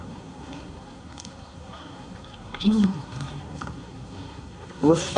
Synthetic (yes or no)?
yes